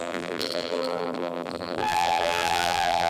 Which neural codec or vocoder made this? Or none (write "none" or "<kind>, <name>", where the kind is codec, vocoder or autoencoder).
vocoder, BigVGAN v2